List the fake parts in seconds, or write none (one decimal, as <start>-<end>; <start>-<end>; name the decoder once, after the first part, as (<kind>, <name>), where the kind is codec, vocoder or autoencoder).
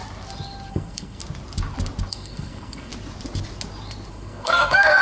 0.7-1.2 (codec, SNAC); 2.1-2.9; 4.1-5.0